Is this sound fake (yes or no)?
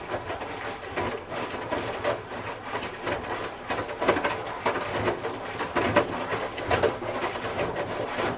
no